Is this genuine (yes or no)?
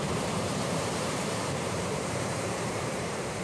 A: no